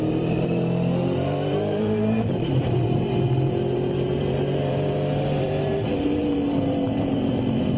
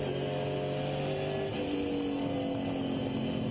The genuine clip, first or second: second